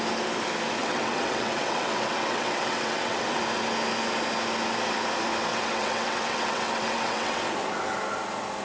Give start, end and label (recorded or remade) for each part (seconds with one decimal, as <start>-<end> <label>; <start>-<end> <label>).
0.0-0.8 recorded; 0.8-3.4 remade; 3.4-5.5 recorded; 5.5-7.4 remade; 7.4-8.6 recorded